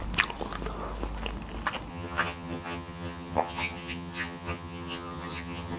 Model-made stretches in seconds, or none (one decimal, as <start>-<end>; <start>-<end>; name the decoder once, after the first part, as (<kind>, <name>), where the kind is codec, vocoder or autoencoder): 1.9-5.8 (vocoder, HiFi-GAN)